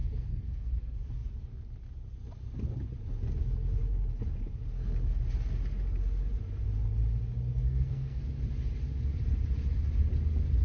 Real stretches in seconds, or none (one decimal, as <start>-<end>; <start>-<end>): 0.7-7.5; 8.2-10.6